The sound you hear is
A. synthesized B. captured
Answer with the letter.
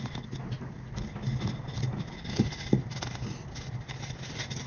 B